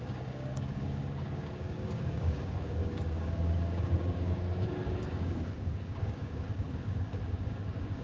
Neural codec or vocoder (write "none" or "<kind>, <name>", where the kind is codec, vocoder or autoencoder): codec, DAC